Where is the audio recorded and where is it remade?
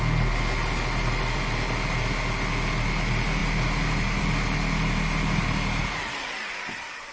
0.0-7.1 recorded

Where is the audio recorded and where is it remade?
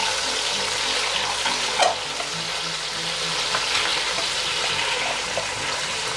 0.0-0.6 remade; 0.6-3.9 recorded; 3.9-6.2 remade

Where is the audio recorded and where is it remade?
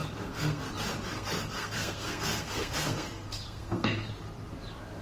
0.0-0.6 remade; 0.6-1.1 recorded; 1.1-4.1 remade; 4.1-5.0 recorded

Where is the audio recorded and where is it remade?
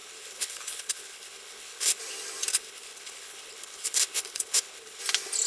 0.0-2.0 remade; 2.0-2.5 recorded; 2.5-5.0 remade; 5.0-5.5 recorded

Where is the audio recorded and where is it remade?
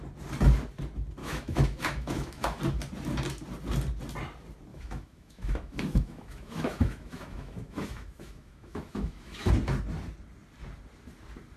0.0-1.2 recorded; 1.2-2.6 remade; 2.6-4.7 recorded; 4.7-9.5 remade; 9.5-11.6 recorded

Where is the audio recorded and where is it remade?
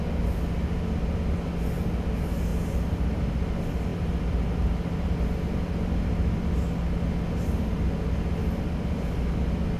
0.0-2.5 recorded; 2.5-3.2 remade; 3.2-3.9 recorded; 3.9-6.0 remade; 6.0-8.4 recorded; 8.4-9.4 remade; 9.4-9.8 recorded